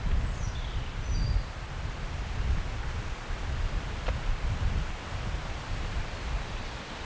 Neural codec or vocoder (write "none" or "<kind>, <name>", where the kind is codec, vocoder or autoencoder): none